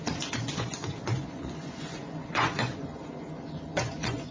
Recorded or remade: remade